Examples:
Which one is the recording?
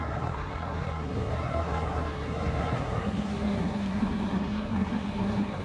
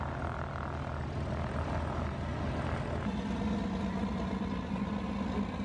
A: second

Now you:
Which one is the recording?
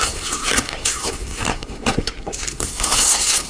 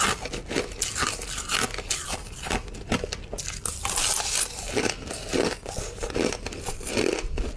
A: second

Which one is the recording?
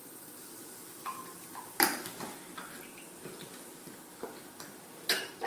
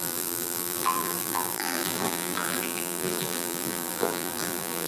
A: first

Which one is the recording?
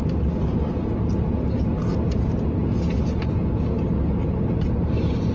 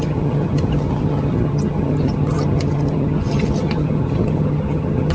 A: first